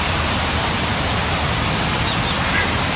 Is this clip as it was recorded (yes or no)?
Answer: yes